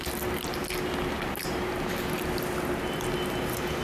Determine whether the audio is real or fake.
real